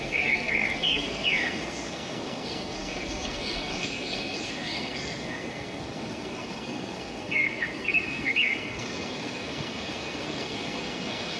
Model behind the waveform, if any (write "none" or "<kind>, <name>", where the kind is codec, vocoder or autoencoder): codec, SNAC